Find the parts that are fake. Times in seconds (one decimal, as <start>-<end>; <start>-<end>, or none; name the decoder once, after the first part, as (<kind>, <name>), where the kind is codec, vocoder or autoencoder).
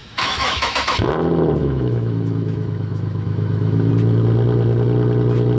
0.0-1.1 (autoencoder, DAC-VAE); 1.6-3.9